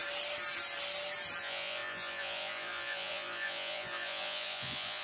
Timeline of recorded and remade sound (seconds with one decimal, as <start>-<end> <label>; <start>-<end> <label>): 0.0-1.4 recorded; 1.4-5.0 remade